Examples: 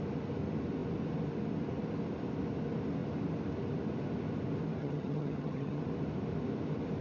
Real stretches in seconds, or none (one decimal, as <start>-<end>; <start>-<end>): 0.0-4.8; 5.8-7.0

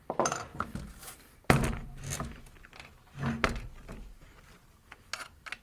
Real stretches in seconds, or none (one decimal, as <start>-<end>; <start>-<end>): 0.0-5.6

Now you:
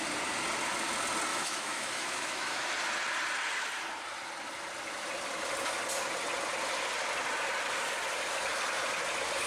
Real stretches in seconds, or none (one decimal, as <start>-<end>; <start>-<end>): 0.0-1.3; 2.7-9.5

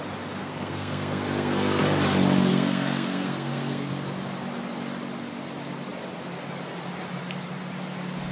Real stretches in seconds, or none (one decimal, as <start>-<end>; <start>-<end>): 0.0-0.4; 1.8-2.5; 3.9-8.3

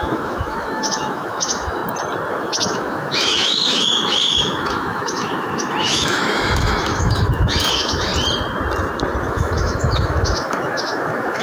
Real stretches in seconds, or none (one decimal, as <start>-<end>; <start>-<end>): 1.8-2.3; 8.1-9.2

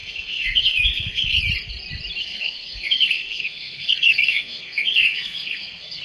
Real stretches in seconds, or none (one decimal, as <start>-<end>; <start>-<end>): 1.4-2.2